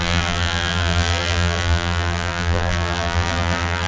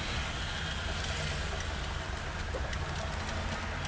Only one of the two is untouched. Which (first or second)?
second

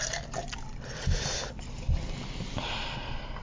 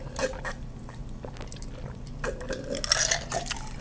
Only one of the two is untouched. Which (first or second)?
second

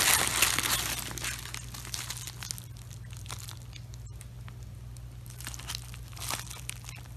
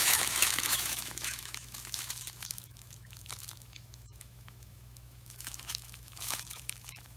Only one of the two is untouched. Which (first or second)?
first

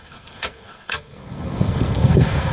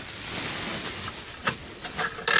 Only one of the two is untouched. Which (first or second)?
second